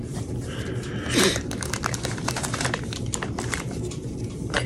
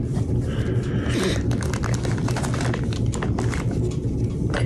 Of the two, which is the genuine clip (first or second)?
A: second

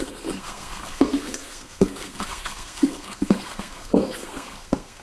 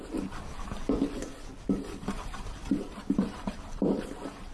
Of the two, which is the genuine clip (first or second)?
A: second